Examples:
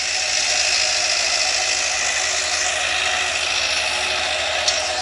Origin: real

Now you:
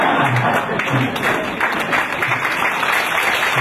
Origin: real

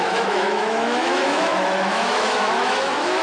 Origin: fake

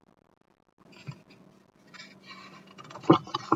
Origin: real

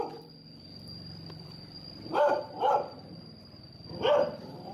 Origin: fake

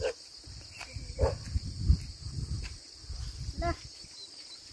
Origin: real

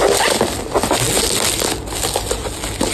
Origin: real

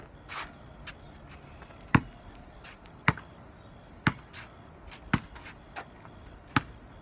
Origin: real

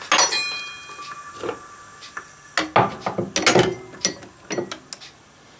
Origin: real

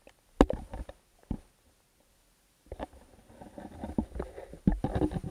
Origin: real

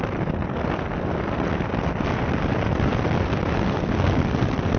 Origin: real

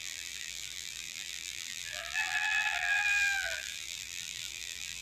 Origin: fake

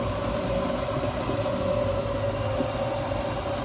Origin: real